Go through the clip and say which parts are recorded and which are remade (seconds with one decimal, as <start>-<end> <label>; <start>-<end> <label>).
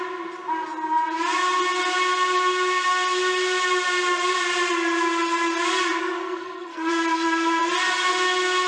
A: 0.0-6.0 recorded; 6.0-6.9 remade; 6.9-8.7 recorded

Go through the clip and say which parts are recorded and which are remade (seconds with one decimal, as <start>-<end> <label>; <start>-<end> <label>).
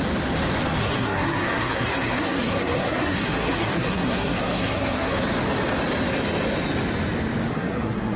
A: 0.0-0.8 recorded; 0.8-5.1 remade; 5.1-7.5 recorded; 7.5-8.2 remade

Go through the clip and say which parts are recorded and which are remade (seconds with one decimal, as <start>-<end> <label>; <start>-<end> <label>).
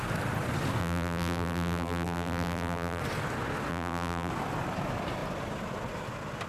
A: 0.0-0.8 recorded; 0.8-3.0 remade; 3.0-3.7 recorded; 3.7-4.3 remade; 4.3-6.5 recorded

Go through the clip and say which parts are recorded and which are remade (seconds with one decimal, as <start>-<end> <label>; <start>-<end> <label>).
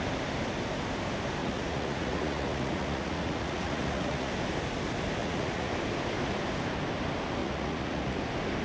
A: 0.0-1.4 recorded; 1.4-4.3 remade; 4.3-5.2 recorded; 5.2-5.7 remade; 5.7-7.4 recorded; 7.4-8.2 remade; 8.2-8.6 recorded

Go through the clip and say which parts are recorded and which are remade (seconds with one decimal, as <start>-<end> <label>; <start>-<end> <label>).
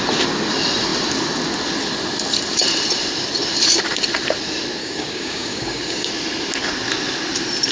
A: 0.0-4.8 recorded; 4.8-6.1 remade; 6.1-7.7 recorded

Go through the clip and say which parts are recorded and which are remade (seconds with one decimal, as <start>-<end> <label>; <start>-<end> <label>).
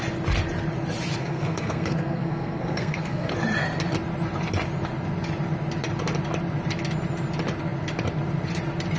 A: 0.0-1.2 recorded; 1.2-3.3 remade; 3.3-9.0 recorded